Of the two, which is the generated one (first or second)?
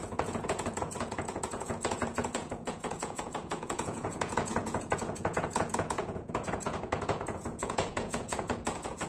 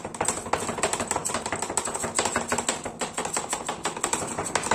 first